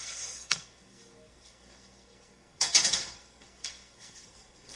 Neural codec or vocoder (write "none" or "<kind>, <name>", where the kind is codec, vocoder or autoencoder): codec, SNAC